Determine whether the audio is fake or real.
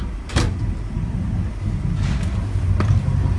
real